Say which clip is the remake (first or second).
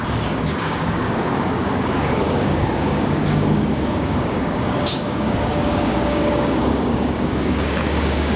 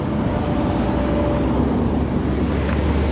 first